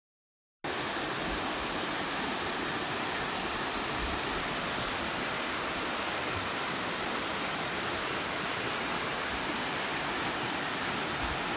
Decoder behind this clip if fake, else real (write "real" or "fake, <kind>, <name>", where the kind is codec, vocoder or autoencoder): real